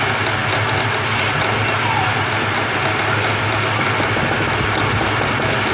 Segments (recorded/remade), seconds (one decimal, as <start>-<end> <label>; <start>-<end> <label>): 0.0-5.7 recorded